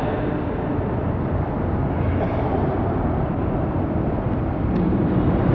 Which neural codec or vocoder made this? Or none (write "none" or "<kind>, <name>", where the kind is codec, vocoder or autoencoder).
none